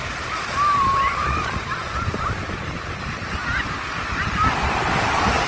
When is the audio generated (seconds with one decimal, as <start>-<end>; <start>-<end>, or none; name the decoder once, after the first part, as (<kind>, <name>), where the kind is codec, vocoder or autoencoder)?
0.0-3.3 (vocoder, BigVGAN v2)